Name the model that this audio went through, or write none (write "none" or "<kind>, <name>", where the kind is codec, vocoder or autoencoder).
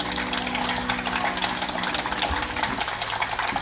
none